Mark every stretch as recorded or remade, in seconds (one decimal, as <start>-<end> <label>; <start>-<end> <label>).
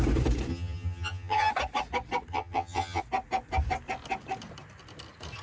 0.0-0.5 recorded; 0.5-1.5 remade; 1.5-2.3 recorded; 2.3-3.0 remade; 3.0-5.4 recorded